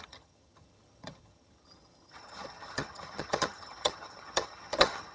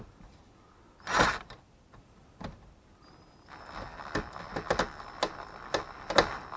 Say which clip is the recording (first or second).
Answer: second